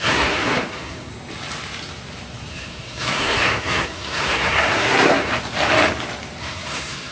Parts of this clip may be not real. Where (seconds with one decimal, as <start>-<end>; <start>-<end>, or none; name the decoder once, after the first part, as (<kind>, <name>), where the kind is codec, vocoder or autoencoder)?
0.0-1.1 (codec, SNAC); 2.5-5.3; 6.4-7.1